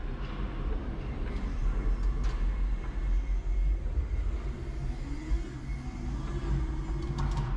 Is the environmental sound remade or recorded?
recorded